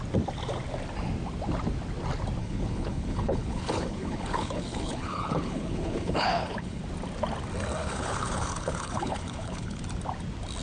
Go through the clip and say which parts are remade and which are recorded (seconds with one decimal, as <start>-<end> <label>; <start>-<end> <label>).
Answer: 0.0-2.4 recorded; 2.4-6.8 remade; 6.8-7.8 recorded; 7.8-9.8 remade; 9.8-10.6 recorded